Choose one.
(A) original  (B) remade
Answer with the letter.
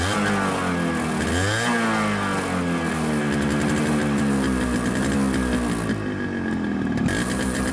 A